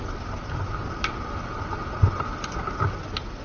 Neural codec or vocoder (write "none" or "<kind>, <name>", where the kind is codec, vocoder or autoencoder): none